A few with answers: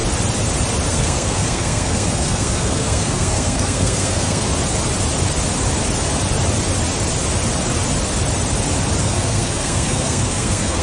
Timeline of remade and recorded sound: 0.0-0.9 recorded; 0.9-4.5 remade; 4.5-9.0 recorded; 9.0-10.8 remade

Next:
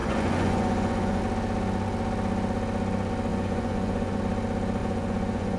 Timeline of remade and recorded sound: 0.0-1.2 remade; 1.2-3.3 recorded; 3.3-4.2 remade; 4.2-4.8 recorded; 4.8-5.6 remade

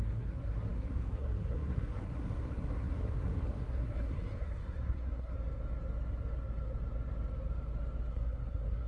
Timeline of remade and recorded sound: 0.0-5.3 remade; 5.3-8.1 recorded; 8.1-8.9 remade

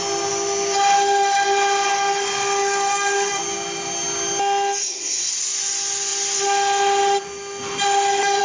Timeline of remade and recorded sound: 0.0-4.8 recorded; 4.8-5.3 remade; 5.3-8.4 recorded

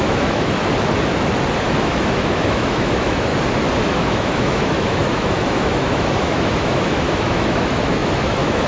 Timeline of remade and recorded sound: 0.0-0.6 remade; 0.6-1.6 recorded; 1.6-3.3 remade; 3.3-3.8 recorded; 3.8-8.7 remade